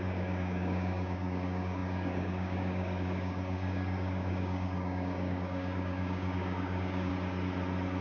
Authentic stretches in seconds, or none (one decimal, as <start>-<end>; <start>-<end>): 7.1-8.0